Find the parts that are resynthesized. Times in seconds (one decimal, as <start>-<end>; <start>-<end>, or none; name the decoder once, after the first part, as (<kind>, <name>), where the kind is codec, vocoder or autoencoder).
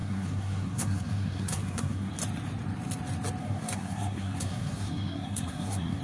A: 0.0-2.1 (codec, SNAC); 3.4-6.0